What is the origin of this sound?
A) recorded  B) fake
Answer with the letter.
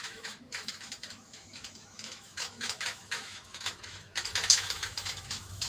B